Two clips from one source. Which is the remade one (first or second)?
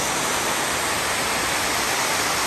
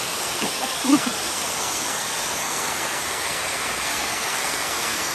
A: second